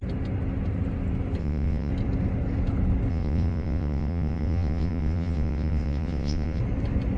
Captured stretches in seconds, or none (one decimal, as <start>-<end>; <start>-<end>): 0.0-1.4; 1.9-3.1; 6.6-7.2